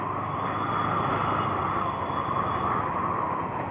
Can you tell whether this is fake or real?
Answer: real